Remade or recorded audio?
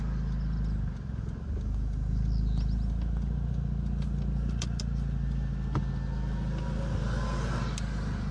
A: recorded